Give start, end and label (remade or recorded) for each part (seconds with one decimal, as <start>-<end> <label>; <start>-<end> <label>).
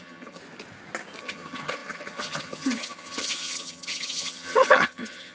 0.0-0.4 remade; 0.4-1.2 recorded; 1.2-5.3 remade